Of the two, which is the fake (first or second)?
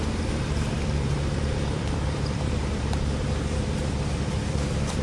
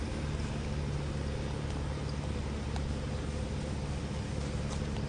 first